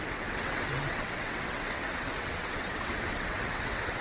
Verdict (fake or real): fake